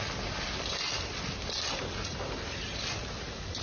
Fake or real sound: real